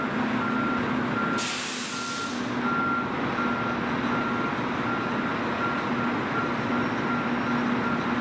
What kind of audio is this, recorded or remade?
recorded